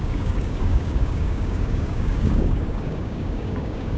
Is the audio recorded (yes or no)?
no